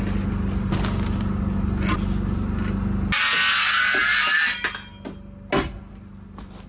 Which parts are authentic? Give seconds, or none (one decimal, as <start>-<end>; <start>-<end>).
0.0-6.7